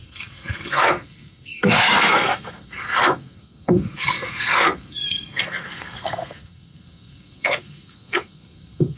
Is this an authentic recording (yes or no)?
no